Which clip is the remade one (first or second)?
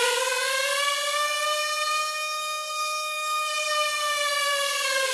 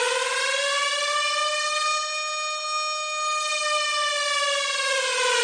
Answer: first